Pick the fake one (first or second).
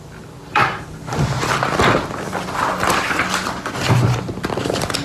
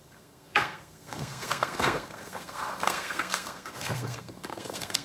second